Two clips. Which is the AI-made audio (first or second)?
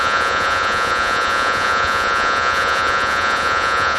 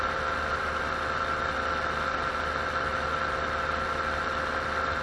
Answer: first